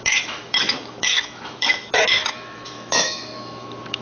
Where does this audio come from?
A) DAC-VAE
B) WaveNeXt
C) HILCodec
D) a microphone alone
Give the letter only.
A